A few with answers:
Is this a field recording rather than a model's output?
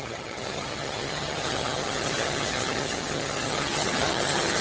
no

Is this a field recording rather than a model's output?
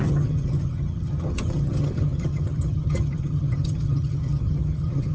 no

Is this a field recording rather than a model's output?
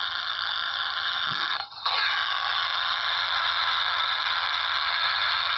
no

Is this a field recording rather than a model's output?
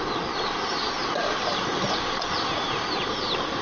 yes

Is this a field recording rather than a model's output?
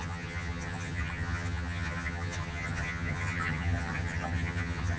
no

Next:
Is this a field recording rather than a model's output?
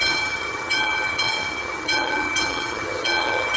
no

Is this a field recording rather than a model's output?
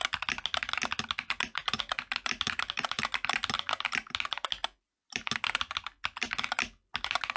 yes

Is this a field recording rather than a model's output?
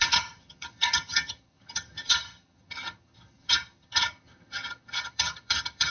no